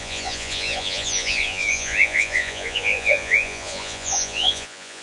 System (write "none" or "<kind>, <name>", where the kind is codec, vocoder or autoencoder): vocoder, Vocos